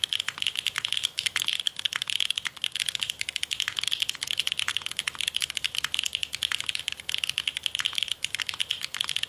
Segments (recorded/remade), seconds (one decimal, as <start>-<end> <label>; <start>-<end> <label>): 0.0-9.3 recorded